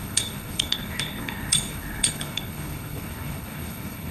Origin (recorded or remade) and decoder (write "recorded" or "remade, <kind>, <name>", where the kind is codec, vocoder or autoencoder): remade, codec, HILCodec